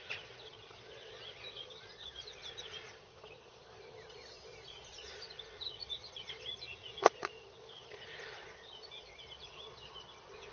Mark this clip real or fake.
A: fake